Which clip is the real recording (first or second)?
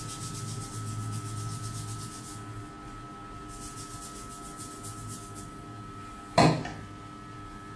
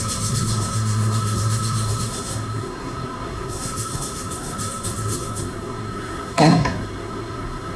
first